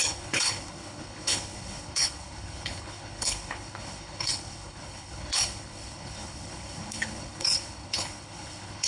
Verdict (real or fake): fake